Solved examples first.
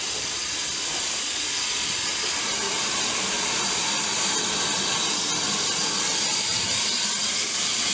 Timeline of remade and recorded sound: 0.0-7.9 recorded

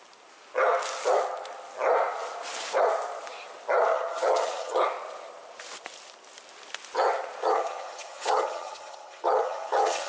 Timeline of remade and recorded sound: 0.0-3.9 recorded; 3.9-4.8 remade; 4.8-7.4 recorded; 7.4-10.1 remade